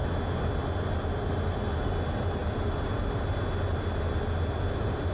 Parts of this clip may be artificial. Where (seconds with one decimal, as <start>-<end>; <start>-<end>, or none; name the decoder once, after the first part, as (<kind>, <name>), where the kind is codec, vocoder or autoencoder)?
2.4-3.4 (vocoder, BigVGAN v2)